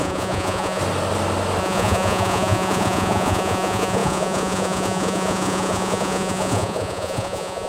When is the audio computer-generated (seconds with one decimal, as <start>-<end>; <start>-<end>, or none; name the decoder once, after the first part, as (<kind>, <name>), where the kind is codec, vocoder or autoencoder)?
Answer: 0.0-0.8 (vocoder, Vocos); 1.6-7.7